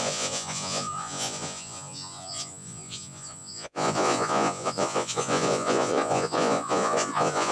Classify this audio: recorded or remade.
remade